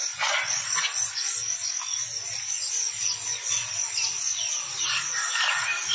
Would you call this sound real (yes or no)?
yes